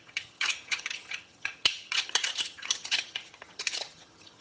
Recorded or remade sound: remade